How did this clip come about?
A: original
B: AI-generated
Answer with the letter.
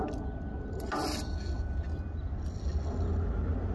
A